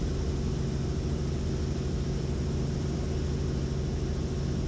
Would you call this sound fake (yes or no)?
no